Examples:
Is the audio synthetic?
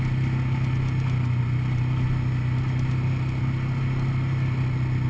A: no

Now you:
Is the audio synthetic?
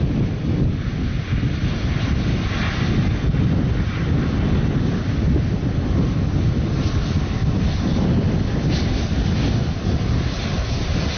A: no